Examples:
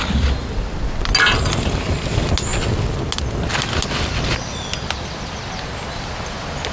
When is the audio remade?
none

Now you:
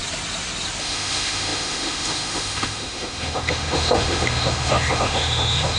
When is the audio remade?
0.8-5.8 (autoencoder, DAC-VAE)

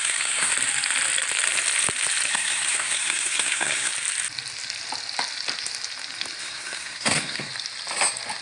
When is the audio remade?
0.0-0.5 (codec, SNAC); 2.3-3.9; 6.4-7.5

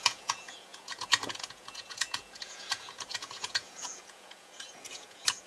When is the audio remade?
0.0-5.5 (vocoder, Vocos)

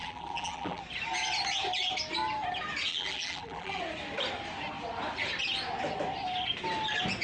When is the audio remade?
0.0-0.8 (vocoder, BigVGAN v2); 2.9-3.8

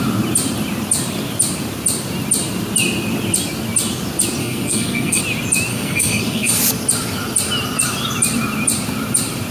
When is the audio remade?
4.4-5.2 (codec, SNAC); 5.7-6.6

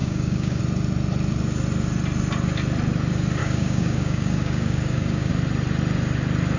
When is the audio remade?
0.0-0.6 (codec, DAC); 3.4-5.3